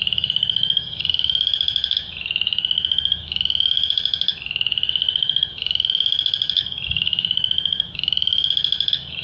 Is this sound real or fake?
fake